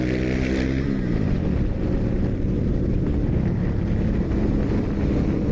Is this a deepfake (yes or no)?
no